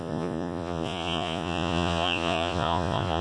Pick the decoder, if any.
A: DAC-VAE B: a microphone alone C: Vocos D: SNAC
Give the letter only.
C